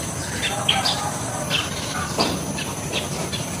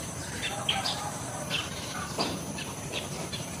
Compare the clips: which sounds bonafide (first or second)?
first